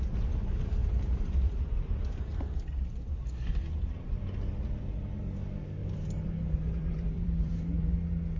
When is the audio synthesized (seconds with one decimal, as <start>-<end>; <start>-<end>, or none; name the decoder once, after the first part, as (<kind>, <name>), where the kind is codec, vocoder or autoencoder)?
0.8-1.6 (vocoder, BigVGAN v2); 2.3-3.6; 5.8-7.9